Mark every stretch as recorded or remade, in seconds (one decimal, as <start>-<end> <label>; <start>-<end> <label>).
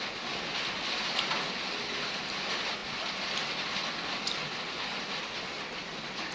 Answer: 0.0-6.3 recorded